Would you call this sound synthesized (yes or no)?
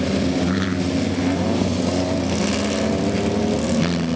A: no